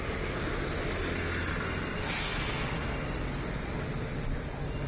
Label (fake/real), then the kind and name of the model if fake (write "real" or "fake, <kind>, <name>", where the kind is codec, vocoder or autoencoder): real